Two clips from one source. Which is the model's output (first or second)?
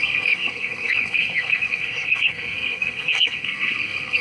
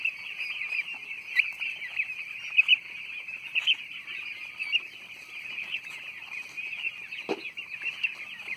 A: first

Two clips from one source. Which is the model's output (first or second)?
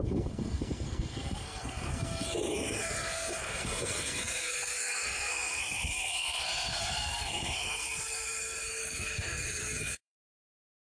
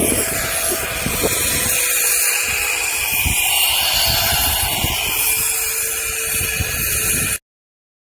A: first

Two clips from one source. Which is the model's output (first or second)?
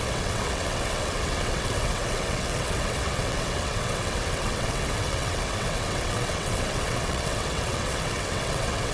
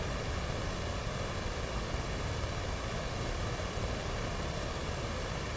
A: first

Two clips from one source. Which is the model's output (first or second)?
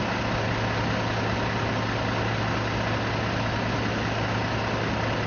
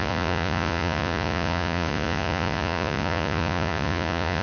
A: second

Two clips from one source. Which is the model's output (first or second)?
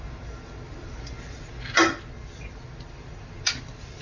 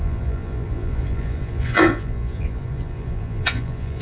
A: second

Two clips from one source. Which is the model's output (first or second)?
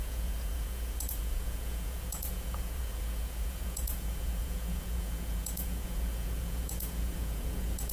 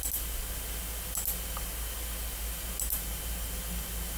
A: first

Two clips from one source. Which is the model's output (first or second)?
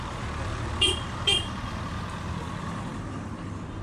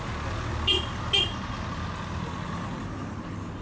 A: first